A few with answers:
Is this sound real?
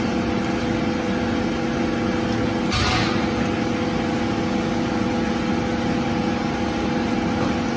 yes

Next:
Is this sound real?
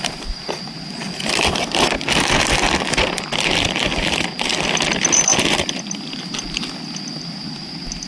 yes